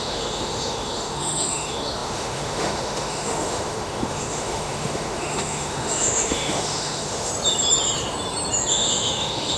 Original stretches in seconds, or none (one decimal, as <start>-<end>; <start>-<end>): 7.3-8.7